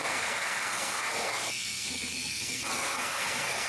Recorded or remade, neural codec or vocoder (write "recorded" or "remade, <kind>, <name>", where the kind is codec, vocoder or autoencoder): remade, codec, SNAC